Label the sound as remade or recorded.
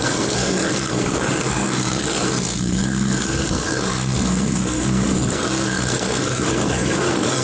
remade